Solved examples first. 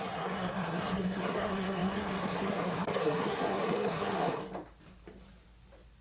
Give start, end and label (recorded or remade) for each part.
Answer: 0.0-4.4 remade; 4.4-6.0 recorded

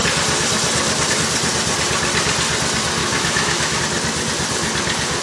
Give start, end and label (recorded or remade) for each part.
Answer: 0.0-3.0 recorded; 3.0-3.8 remade; 3.8-5.2 recorded

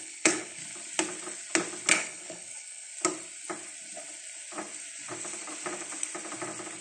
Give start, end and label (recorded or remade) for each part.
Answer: 0.0-0.6 remade; 0.6-1.9 recorded; 1.9-2.9 remade; 2.9-6.8 recorded

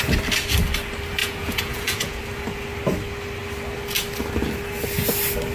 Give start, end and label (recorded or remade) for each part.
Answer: 0.0-1.2 recorded; 1.2-2.2 remade; 2.2-5.5 recorded

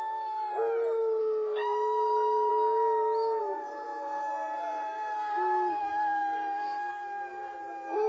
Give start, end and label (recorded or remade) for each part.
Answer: 0.0-0.5 remade; 0.5-1.2 recorded; 1.2-2.5 remade; 2.5-3.4 recorded; 3.4-8.1 remade

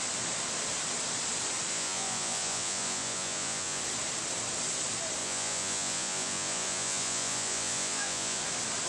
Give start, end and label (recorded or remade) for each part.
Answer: 0.0-1.7 recorded; 1.7-3.8 remade; 3.8-5.2 recorded; 5.2-8.4 remade; 8.4-8.9 recorded